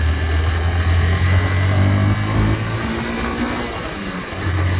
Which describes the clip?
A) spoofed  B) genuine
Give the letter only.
B